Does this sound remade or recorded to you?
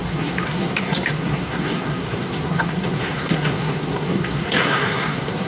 remade